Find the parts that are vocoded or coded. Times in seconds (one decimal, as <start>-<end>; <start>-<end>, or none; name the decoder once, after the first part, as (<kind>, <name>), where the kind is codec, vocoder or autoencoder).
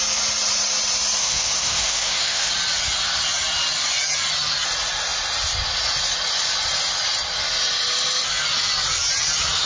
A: 1.2-2.5 (autoencoder, DAC-VAE)